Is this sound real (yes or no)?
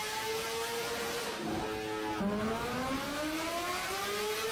yes